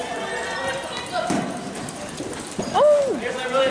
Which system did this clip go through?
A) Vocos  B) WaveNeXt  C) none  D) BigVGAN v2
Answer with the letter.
C